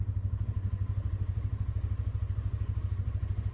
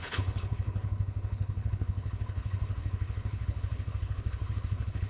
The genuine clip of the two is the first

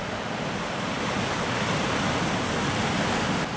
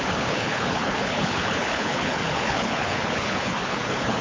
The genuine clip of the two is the first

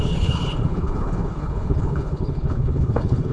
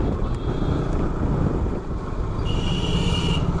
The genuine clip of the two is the second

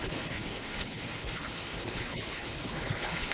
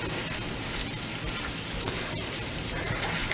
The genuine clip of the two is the second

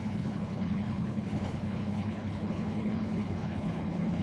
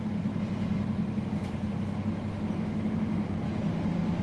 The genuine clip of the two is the second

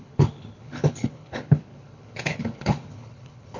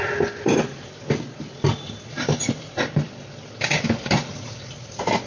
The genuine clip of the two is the second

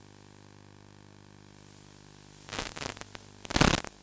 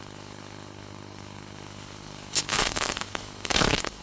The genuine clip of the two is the first